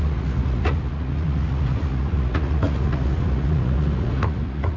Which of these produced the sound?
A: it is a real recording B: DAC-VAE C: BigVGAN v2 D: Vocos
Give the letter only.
D